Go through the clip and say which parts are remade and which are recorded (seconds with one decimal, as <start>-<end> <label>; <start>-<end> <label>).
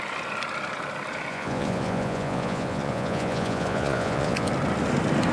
0.0-1.3 recorded; 1.3-4.5 remade; 4.5-5.3 recorded